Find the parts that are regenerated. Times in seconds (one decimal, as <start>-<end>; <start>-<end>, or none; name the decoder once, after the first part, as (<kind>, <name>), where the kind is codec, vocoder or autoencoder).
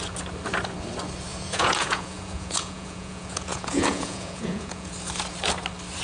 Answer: 1.3-4.9 (vocoder, Vocos)